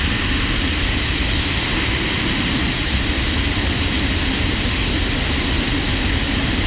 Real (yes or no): yes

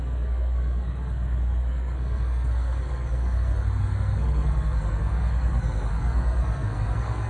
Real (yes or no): no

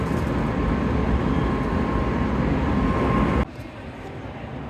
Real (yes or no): yes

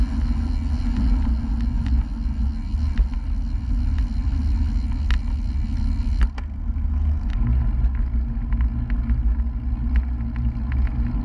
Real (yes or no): yes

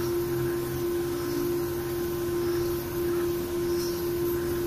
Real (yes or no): yes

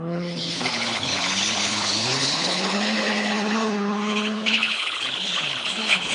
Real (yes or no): no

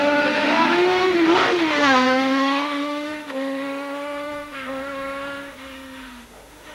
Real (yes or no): no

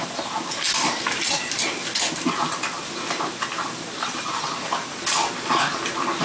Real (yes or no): yes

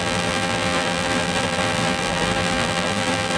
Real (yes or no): no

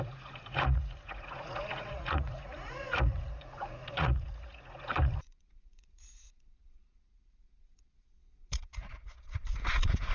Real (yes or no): no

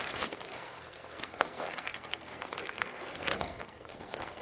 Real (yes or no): no